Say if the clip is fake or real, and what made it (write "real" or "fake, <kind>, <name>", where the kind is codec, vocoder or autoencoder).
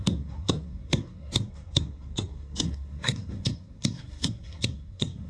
fake, codec, SNAC